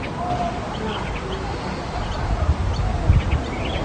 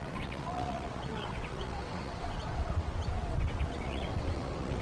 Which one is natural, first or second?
first